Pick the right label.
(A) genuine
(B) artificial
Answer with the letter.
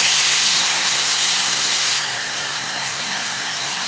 B